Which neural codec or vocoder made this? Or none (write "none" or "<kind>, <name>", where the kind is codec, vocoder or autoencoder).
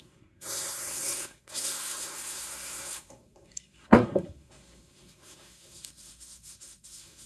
codec, SNAC